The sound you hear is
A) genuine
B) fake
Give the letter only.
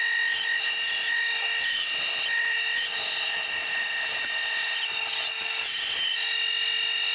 A